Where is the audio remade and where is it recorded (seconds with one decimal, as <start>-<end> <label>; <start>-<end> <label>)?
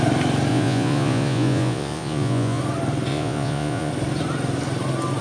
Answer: 0.0-0.5 recorded; 0.5-2.6 remade; 2.6-3.1 recorded; 3.1-3.9 remade; 3.9-5.2 recorded